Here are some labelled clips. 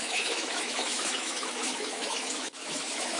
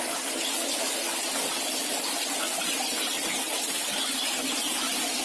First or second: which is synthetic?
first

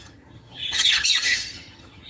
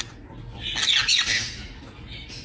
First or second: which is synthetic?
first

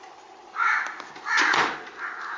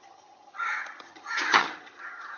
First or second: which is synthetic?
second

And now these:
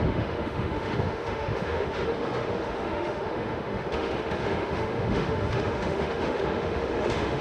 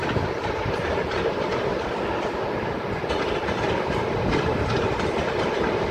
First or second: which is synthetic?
first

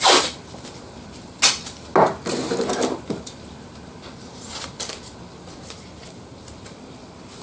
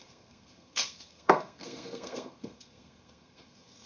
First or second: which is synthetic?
second